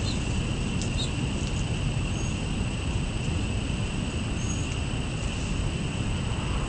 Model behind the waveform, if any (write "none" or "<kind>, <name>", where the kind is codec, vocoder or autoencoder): none